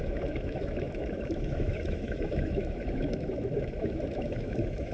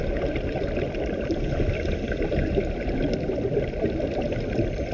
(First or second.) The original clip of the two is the second